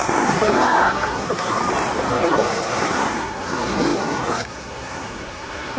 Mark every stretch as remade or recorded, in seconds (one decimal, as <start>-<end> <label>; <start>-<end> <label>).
0.0-1.6 remade; 1.6-2.1 recorded; 2.1-5.8 remade